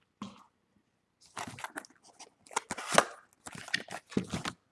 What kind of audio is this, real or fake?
real